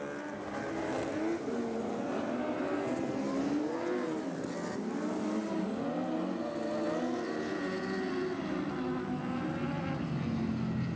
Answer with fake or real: real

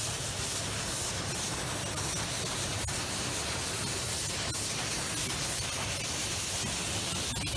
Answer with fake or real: real